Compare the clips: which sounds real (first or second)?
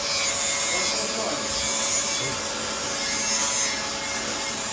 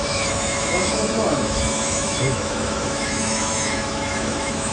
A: first